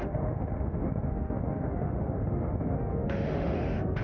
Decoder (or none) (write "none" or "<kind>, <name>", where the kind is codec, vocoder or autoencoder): autoencoder, DAC-VAE